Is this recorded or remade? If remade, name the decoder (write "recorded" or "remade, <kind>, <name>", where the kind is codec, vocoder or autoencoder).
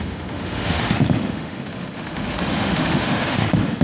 remade, autoencoder, DAC-VAE